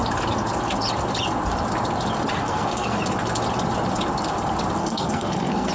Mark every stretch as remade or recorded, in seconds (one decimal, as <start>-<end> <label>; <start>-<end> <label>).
0.0-2.4 recorded; 2.4-3.0 remade; 3.0-4.8 recorded; 4.8-5.7 remade